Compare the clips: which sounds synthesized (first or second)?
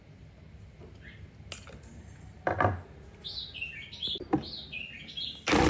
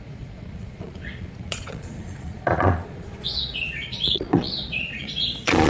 second